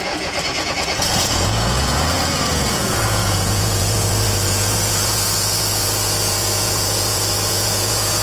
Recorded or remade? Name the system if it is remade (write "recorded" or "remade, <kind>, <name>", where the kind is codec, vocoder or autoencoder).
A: remade, vocoder, Vocos